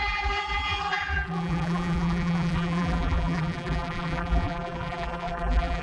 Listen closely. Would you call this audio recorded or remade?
remade